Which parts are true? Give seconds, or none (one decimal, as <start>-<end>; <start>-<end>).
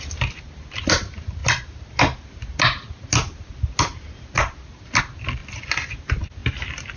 0.0-7.0